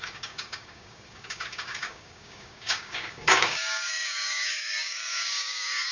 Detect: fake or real fake